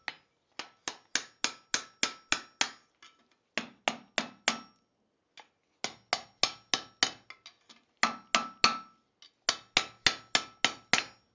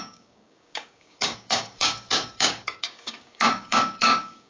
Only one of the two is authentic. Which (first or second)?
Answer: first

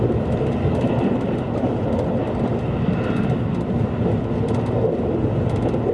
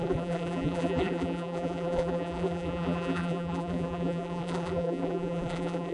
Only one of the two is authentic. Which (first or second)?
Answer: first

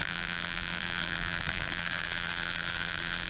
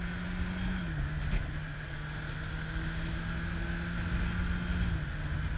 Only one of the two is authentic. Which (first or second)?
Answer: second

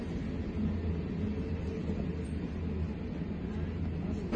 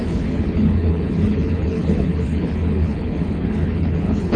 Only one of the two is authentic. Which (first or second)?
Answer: first